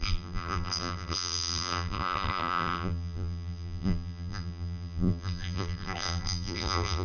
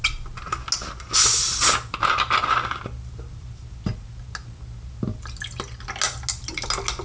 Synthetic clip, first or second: first